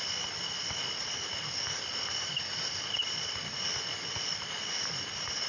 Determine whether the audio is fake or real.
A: real